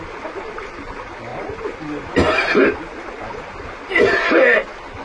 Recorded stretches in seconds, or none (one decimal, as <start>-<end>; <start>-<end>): 0.0-5.0